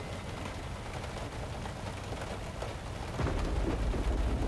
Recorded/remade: recorded